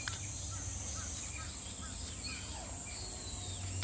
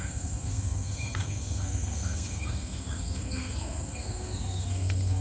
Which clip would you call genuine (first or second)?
first